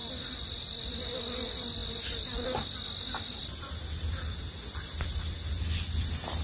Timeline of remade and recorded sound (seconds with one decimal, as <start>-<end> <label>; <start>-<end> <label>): 0.0-6.4 recorded